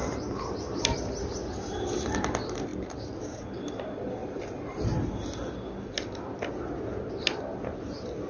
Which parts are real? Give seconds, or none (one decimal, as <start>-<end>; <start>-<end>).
0.0-2.7; 3.7-4.2; 5.1-8.3